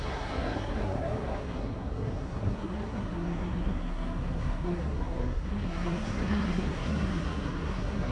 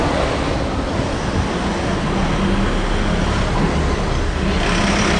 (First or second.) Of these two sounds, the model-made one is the first